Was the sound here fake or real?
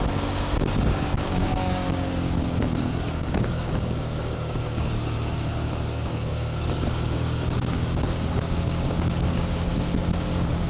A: fake